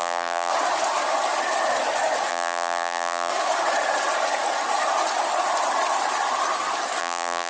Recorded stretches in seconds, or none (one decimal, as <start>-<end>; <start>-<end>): 0.5-2.3; 3.3-7.0